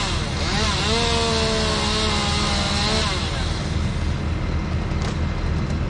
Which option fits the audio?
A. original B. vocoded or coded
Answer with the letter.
A